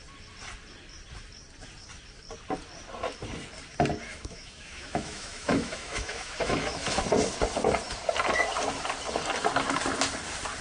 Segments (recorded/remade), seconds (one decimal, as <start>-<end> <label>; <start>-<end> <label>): 0.0-4.1 recorded; 4.1-7.0 remade; 7.0-10.6 recorded